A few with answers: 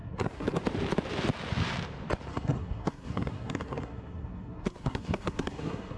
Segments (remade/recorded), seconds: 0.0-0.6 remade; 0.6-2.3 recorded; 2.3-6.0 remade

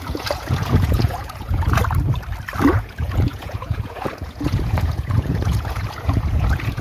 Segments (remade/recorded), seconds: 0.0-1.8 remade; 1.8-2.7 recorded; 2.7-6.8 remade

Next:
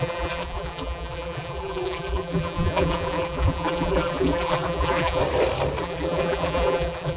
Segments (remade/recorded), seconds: 0.0-5.2 remade; 5.2-5.8 recorded; 5.8-7.2 remade